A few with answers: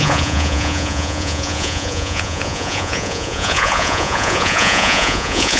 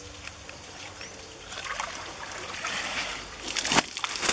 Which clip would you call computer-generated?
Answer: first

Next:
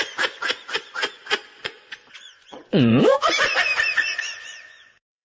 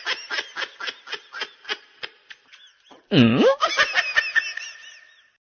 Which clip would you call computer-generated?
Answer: first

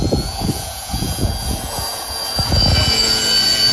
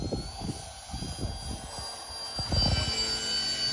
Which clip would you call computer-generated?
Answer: first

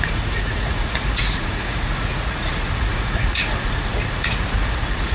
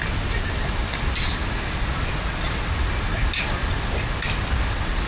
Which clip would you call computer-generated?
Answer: first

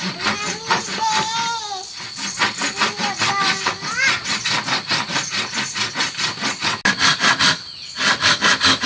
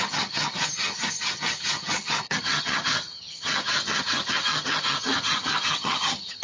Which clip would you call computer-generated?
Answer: second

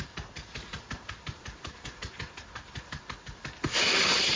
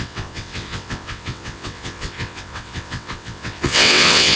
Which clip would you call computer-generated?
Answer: second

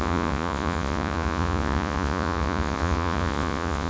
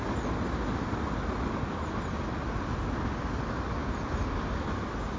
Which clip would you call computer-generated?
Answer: first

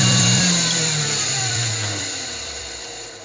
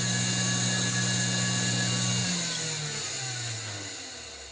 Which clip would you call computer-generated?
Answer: first